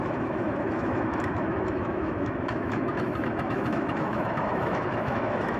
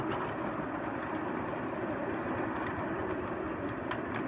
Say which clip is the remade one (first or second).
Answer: first